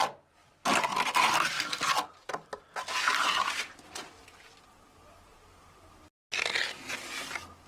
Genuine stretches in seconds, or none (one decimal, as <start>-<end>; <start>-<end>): 0.0-7.7